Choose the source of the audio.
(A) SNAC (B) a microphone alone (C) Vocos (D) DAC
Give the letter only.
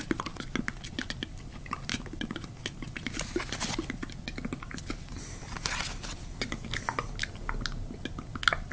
B